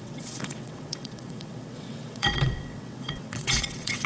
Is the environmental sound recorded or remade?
remade